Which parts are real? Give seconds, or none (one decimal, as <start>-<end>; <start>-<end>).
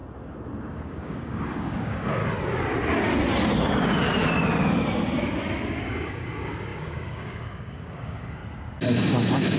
0.0-0.7; 2.2-5.8; 8.4-9.1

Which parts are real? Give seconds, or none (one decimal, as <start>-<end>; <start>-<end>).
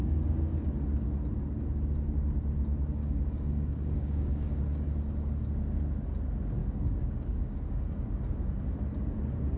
0.7-3.0; 4.6-6.6; 8.1-9.6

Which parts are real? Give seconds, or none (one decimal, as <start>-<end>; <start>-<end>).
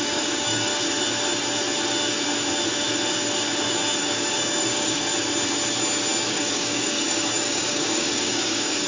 0.7-4.0; 5.1-6.3